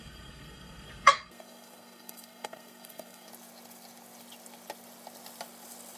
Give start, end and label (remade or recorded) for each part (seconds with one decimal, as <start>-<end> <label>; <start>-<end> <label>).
0.0-3.3 remade; 3.3-6.0 recorded